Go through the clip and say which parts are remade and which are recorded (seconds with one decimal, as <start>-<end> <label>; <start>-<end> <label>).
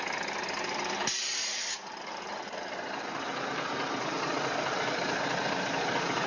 0.0-6.3 recorded